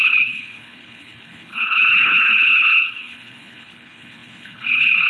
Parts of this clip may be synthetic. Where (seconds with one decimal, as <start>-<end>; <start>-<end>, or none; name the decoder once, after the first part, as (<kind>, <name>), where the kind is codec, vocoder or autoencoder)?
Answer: 0.0-5.1 (codec, HILCodec)